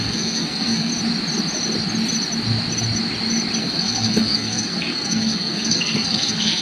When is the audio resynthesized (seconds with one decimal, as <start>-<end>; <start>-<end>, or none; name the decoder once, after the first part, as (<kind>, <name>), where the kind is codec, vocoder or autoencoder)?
0.0-0.9 (codec, SNAC); 3.6-6.6